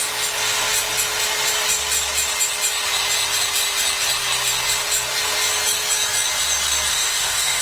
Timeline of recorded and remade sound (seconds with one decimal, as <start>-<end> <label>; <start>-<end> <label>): 0.0-6.9 recorded; 6.9-7.6 remade